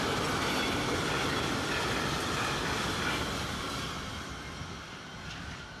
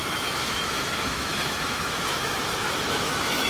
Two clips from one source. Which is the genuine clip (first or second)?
first